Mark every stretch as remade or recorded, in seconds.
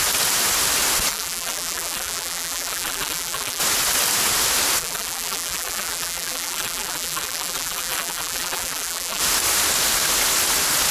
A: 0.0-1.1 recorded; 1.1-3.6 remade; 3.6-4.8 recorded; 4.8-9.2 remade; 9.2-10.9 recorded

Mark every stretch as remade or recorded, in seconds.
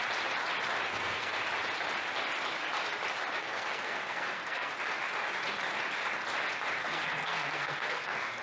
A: 0.0-0.9 recorded; 0.9-1.4 remade; 1.4-3.4 recorded; 3.4-4.7 remade; 4.7-6.8 recorded; 6.8-8.4 remade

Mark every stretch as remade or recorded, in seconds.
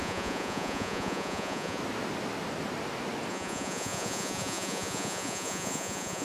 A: 0.0-1.8 remade; 1.8-3.3 recorded; 3.3-6.2 remade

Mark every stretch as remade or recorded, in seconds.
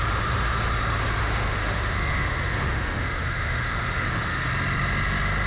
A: 0.0-1.2 recorded; 1.2-4.5 remade; 4.5-5.5 recorded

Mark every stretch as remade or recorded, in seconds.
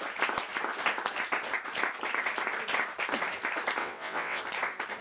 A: 0.0-3.8 recorded; 3.8-4.4 remade; 4.4-5.0 recorded